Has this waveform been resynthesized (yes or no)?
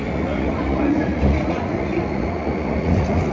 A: yes